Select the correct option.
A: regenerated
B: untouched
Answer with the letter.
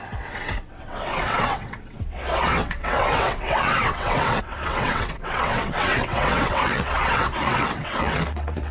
A